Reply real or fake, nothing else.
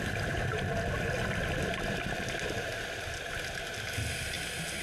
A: real